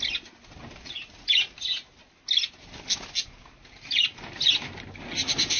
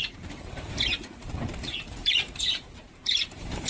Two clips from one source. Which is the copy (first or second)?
second